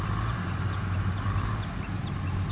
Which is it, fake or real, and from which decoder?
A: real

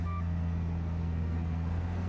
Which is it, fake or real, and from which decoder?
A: fake, codec, SNAC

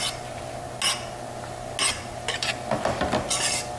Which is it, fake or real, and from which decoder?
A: real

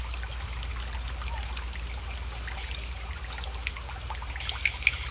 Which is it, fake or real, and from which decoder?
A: real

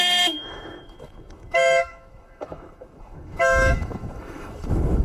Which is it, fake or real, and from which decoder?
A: fake, autoencoder, DAC-VAE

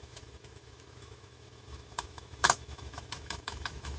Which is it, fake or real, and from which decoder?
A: fake, autoencoder, DAC-VAE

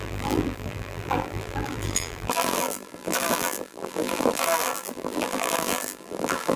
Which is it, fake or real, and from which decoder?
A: fake, vocoder, BigVGAN v2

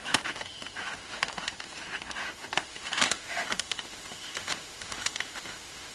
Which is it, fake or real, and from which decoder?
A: fake, autoencoder, DAC-VAE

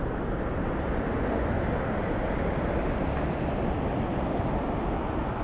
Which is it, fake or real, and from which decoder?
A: real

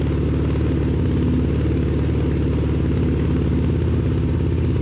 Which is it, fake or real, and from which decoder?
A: real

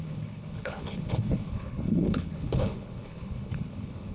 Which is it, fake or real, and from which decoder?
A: fake, codec, HILCodec